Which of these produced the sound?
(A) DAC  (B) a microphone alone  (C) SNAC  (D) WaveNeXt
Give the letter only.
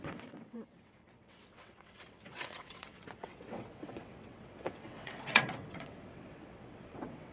D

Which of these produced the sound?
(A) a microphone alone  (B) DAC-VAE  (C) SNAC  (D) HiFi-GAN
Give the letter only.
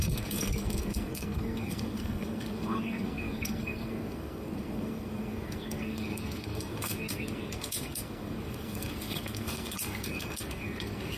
C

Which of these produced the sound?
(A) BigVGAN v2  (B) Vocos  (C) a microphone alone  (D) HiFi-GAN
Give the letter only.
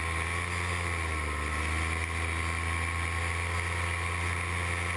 C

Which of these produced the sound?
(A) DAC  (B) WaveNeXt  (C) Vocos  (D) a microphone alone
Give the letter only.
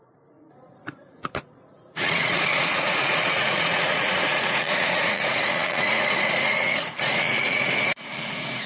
C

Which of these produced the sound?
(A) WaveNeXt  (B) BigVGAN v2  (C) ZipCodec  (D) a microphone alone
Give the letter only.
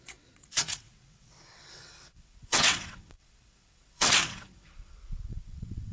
A